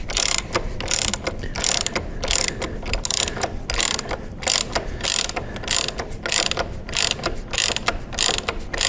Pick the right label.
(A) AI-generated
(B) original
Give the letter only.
B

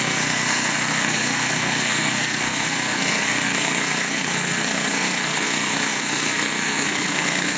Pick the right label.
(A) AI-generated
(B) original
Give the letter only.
A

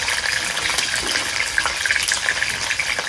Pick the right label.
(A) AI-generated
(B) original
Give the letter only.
B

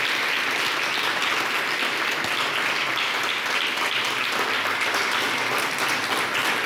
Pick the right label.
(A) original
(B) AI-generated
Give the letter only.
A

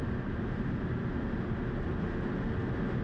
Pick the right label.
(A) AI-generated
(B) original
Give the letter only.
B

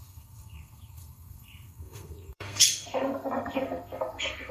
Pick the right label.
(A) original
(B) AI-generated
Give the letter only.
B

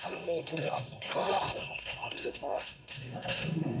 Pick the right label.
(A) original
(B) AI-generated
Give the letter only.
B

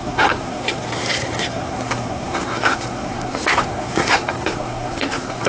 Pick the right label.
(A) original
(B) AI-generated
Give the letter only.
B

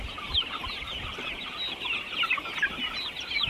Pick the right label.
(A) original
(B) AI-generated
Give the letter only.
A